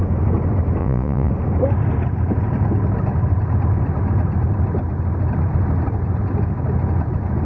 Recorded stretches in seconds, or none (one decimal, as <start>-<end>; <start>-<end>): 0.0-0.8; 1.3-7.5